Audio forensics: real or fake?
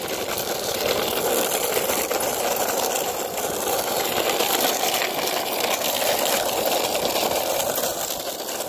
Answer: fake